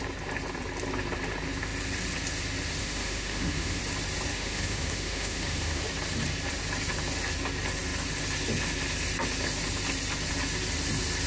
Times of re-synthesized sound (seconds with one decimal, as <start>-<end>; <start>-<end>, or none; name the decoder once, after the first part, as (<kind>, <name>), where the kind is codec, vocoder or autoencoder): 2.8-3.8 (autoencoder, DAC-VAE); 4.3-5.8